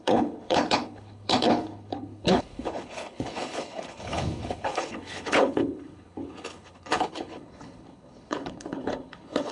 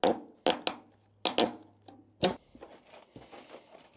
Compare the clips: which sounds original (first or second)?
second